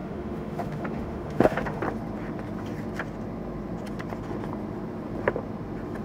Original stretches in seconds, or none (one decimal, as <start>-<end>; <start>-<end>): 1.8-6.0